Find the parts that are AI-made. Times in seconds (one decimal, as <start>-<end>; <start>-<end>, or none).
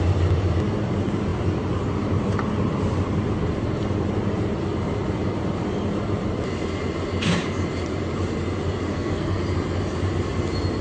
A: 8.9-9.4